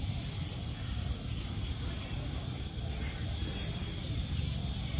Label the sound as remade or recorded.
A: recorded